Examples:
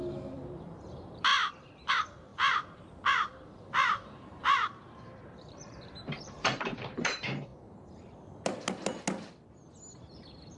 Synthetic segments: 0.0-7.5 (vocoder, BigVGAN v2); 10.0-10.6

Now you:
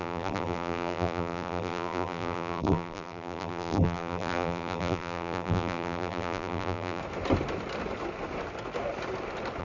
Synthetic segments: 0.0-7.0 (vocoder, BigVGAN v2)

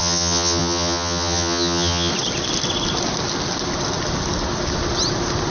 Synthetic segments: 0.0-2.1 (vocoder, HiFi-GAN)

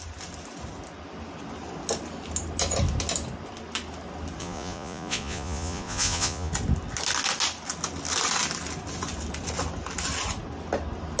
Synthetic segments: 4.4-6.5 (vocoder, Vocos)

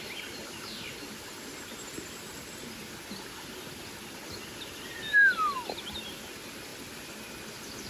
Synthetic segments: none

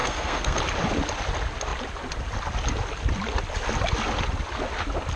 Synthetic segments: 0.0-0.6 (codec, SNAC)